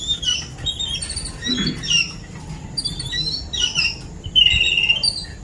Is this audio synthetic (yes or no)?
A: no